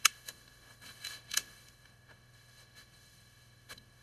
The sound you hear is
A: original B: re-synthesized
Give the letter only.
B